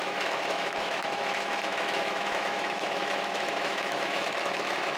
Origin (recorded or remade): remade